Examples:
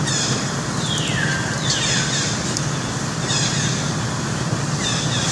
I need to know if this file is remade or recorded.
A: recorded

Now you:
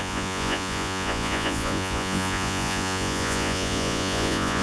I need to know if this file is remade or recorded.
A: remade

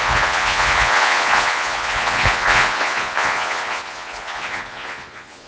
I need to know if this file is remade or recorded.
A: remade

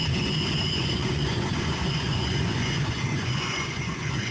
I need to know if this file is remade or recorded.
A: remade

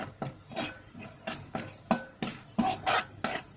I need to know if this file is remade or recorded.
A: recorded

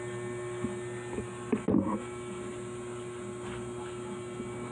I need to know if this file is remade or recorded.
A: recorded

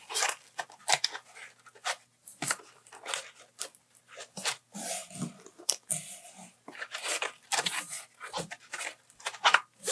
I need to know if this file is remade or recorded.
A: recorded